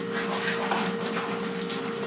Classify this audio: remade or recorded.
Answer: recorded